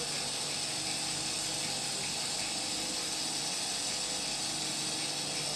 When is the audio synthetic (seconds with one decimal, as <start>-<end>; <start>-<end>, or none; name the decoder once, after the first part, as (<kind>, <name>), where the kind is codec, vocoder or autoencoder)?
none